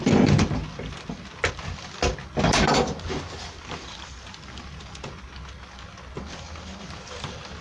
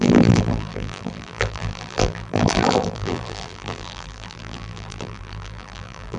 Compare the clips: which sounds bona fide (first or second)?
first